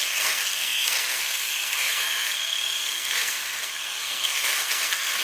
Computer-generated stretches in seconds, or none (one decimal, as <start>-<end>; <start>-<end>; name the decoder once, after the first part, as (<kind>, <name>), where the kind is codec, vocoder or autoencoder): 0.0-5.2 (codec, SNAC)